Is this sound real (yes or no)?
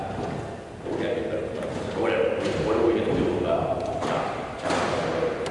yes